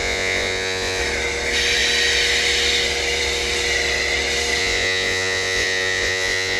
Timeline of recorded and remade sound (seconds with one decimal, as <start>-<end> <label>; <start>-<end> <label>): 0.0-1.0 remade; 1.0-4.6 recorded; 4.6-6.6 remade